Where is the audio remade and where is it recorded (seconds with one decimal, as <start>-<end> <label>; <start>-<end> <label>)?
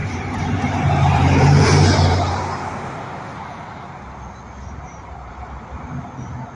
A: 0.0-4.0 remade; 4.0-4.6 recorded; 4.6-5.3 remade; 5.3-6.6 recorded